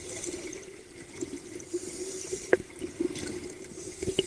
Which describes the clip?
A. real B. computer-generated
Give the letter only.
A